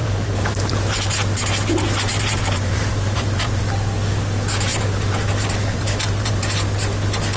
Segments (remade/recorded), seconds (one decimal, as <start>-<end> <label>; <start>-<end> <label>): 0.0-0.7 remade; 0.7-2.1 recorded; 2.1-3.6 remade; 3.6-4.7 recorded; 4.7-6.4 remade; 6.4-7.4 recorded